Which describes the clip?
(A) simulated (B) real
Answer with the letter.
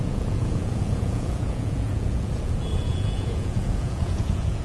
A